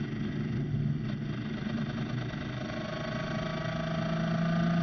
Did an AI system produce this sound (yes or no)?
no